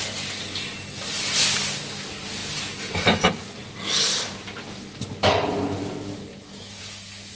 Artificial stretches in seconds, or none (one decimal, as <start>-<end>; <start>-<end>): none